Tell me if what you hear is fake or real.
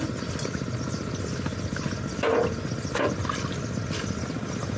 real